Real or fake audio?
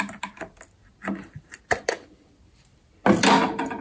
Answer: real